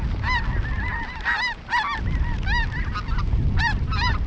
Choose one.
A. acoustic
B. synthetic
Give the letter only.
A